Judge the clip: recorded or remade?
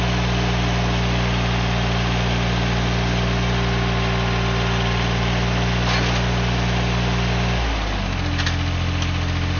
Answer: recorded